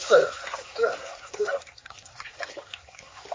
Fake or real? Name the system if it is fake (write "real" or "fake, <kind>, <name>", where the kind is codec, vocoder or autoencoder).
fake, codec, SNAC